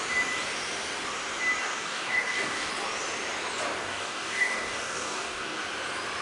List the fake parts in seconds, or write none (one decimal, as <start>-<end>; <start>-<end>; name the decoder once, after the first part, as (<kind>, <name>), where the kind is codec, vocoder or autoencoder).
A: 1.6-2.7 (codec, DAC); 3.8-5.6